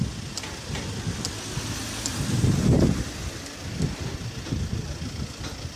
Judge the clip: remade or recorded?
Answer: recorded